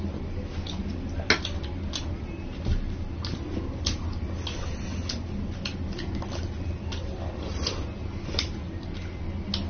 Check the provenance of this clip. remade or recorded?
recorded